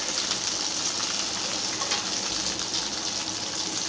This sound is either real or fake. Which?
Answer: real